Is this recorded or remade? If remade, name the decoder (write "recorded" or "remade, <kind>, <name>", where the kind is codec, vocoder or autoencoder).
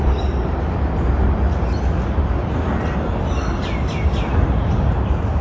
recorded